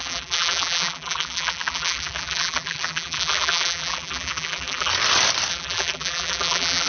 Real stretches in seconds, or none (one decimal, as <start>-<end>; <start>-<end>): 4.9-5.5